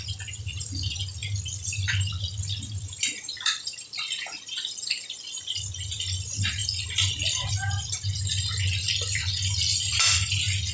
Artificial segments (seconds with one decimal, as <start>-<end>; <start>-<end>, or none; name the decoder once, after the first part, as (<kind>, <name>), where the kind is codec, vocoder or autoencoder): 1.2-5.8 (vocoder, BigVGAN v2); 6.6-7.5